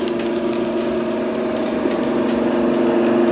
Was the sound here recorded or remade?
recorded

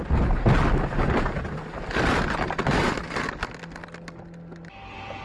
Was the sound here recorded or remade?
recorded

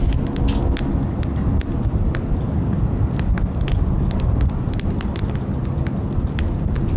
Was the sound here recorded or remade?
recorded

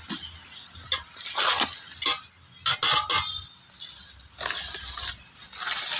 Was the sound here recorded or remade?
recorded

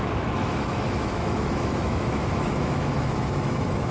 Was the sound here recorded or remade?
remade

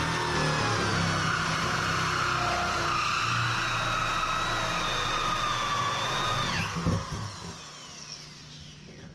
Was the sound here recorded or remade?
recorded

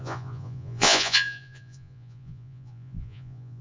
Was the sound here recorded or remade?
remade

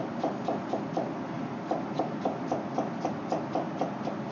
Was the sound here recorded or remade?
recorded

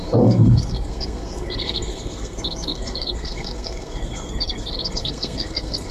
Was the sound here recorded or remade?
remade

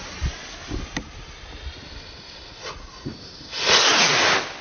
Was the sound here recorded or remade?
recorded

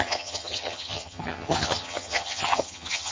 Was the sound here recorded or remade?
remade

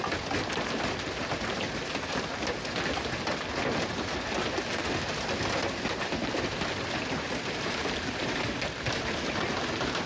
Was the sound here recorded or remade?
recorded